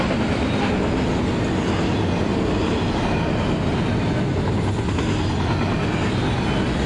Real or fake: real